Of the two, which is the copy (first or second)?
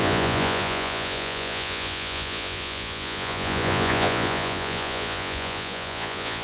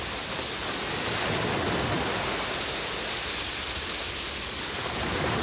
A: first